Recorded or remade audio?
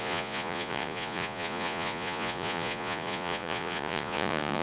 remade